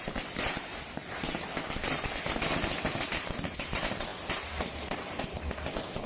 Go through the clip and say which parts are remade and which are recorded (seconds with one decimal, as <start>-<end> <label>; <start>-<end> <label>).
0.0-2.1 remade; 2.1-3.2 recorded; 3.2-6.1 remade